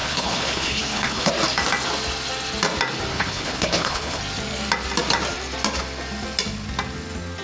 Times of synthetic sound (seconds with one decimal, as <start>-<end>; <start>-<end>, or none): 0.0-1.3; 3.1-4.2